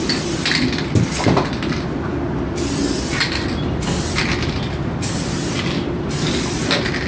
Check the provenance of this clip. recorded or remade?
recorded